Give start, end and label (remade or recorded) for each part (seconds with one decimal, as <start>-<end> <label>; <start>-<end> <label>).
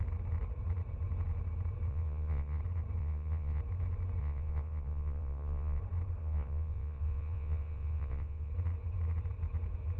0.0-1.9 recorded; 1.9-2.6 remade; 2.6-3.0 recorded; 3.0-3.6 remade; 3.6-4.2 recorded; 4.2-5.8 remade; 5.8-6.2 recorded; 6.2-8.5 remade; 8.5-10.0 recorded